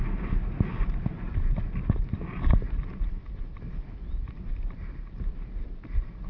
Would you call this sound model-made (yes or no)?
no